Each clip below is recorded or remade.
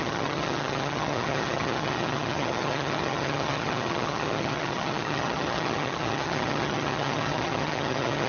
remade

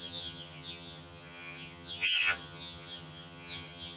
remade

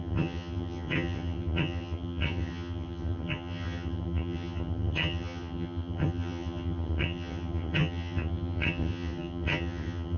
remade